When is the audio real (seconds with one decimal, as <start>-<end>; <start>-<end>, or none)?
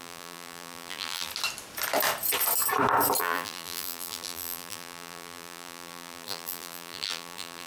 1.3-3.2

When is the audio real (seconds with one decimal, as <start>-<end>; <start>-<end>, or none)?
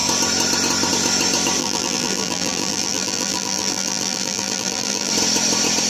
0.0-1.6; 5.1-5.9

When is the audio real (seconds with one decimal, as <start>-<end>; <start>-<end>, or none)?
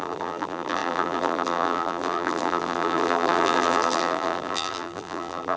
none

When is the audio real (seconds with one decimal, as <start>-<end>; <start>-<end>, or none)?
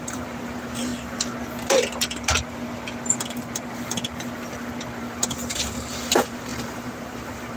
0.9-5.0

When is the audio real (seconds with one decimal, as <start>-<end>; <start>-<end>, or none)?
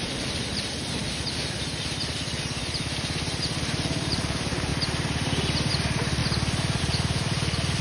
4.7-5.7; 6.2-6.8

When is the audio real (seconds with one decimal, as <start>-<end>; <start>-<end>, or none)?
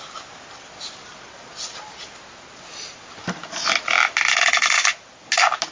0.0-5.7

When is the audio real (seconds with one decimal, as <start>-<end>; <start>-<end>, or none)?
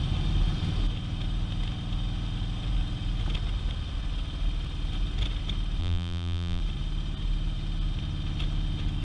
0.0-5.8; 6.6-9.0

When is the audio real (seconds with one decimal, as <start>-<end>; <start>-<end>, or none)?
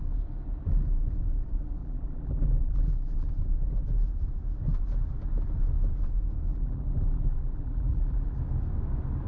0.0-1.8; 3.3-6.5; 8.4-9.3